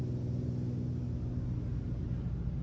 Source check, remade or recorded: recorded